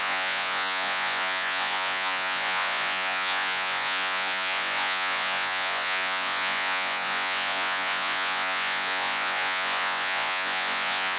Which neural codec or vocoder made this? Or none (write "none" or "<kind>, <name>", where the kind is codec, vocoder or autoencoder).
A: vocoder, Vocos